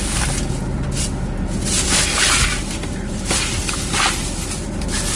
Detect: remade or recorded recorded